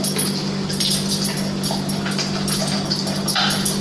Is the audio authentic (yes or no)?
yes